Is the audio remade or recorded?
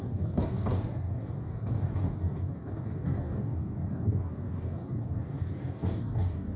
remade